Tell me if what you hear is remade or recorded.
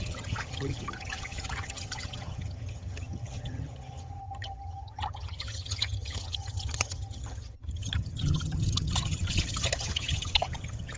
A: remade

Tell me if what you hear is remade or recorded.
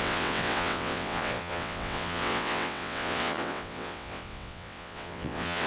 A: remade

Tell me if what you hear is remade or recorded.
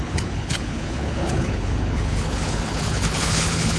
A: remade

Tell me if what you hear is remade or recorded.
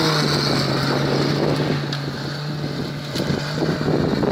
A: recorded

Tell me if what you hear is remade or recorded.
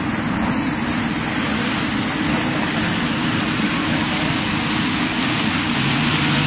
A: recorded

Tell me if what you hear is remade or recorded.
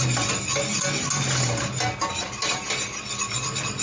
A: recorded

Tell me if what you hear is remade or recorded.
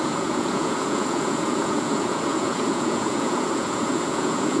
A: remade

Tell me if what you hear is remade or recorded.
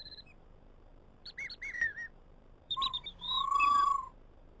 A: remade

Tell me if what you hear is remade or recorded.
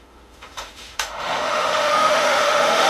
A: remade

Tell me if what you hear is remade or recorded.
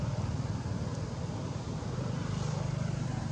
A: recorded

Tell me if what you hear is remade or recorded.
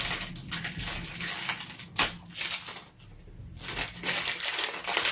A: recorded